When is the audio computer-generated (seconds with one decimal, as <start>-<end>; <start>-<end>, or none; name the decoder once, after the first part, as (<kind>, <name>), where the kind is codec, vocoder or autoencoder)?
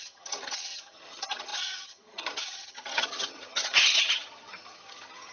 0.0-5.3 (vocoder, HiFi-GAN)